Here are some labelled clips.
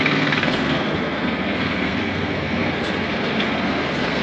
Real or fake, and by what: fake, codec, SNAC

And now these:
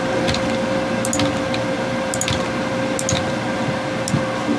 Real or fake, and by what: real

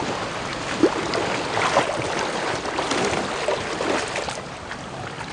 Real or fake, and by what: real